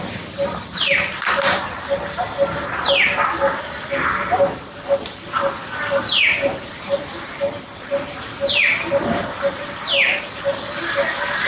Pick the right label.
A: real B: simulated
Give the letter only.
A